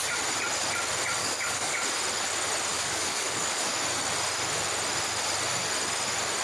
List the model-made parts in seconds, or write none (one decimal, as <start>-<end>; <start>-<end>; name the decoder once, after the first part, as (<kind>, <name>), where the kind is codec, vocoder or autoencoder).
1.2-1.8 (codec, DAC); 2.7-3.7